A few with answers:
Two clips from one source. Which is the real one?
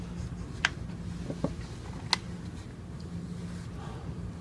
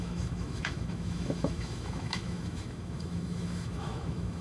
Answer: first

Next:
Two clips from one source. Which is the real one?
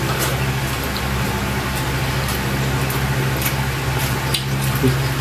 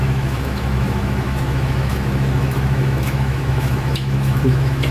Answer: first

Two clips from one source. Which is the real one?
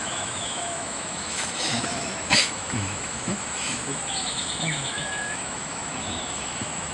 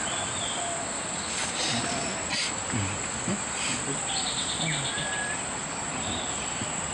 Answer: second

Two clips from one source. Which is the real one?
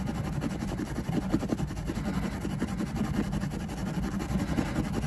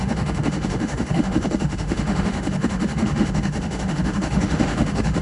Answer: first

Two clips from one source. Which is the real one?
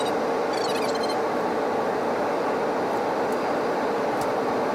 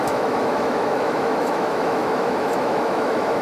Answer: first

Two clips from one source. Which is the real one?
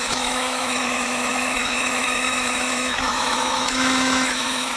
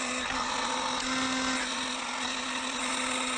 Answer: second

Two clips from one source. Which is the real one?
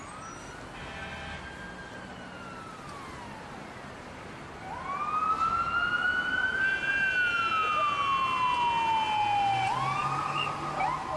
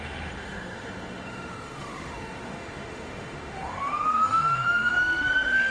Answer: first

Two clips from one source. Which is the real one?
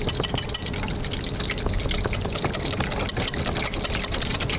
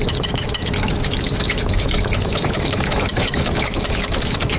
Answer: first